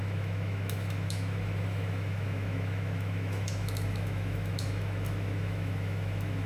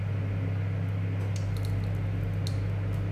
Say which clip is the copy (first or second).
first